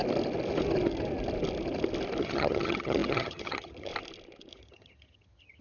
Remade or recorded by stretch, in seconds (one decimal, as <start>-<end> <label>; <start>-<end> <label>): 0.0-2.2 recorded; 2.2-3.9 remade; 3.9-4.5 recorded; 4.5-5.6 remade